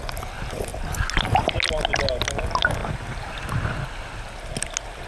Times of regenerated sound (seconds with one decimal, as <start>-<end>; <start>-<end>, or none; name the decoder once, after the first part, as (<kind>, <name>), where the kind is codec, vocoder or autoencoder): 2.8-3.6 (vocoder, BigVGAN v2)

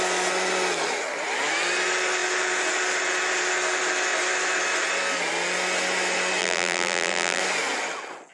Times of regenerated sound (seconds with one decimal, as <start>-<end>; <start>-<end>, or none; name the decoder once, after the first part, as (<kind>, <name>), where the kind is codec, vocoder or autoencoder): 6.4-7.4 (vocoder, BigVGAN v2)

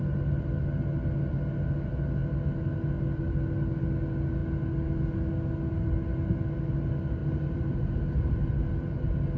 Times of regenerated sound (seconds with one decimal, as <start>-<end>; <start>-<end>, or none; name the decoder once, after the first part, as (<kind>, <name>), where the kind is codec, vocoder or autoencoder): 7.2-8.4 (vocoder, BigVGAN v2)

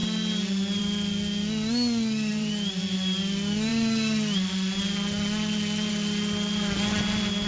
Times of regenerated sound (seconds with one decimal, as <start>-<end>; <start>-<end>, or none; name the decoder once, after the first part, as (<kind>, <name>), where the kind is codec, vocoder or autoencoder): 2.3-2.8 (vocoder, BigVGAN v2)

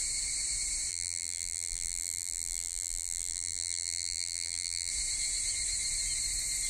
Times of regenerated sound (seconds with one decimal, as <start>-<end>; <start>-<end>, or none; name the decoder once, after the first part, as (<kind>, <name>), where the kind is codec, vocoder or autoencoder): 0.9-4.9 (vocoder, BigVGAN v2)